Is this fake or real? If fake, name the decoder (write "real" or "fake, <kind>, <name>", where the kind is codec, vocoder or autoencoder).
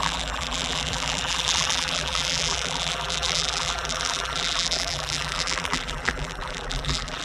fake, vocoder, BigVGAN v2